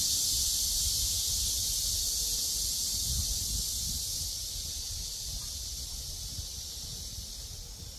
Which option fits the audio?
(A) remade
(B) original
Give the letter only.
B